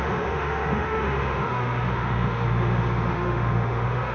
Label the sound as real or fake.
fake